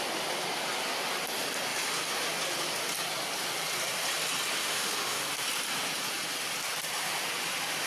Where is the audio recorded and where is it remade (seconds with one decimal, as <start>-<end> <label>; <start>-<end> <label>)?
0.0-4.6 recorded; 4.6-5.2 remade; 5.2-7.9 recorded